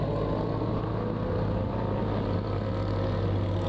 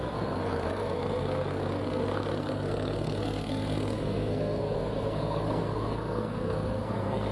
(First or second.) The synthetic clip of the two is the second